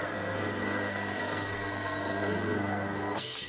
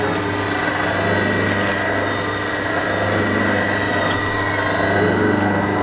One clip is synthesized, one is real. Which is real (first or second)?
second